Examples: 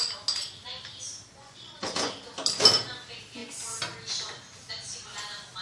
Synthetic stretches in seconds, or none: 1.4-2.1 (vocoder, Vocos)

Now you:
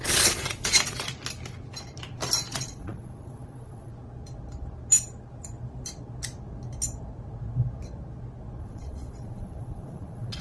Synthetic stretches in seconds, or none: 0.0-1.1 (vocoder, Vocos); 2.5-3.9; 8.6-10.4

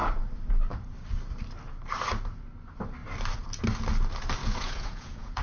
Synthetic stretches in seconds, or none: 4.4-5.4 (vocoder, Vocos)

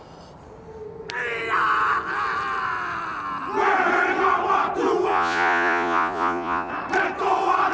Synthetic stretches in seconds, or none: 5.1-6.7 (vocoder, Vocos)